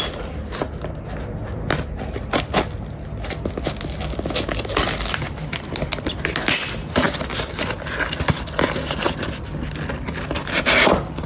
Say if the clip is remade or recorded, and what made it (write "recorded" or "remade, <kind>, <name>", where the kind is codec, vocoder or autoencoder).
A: recorded